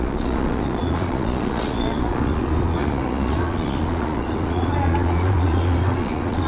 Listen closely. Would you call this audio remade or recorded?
remade